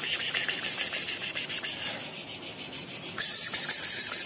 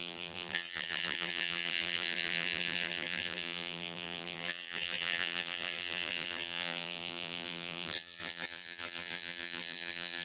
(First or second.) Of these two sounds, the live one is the first